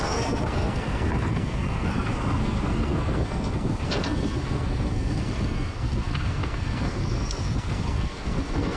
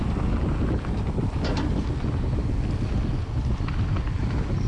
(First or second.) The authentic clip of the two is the second